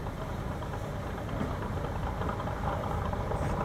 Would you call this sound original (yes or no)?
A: yes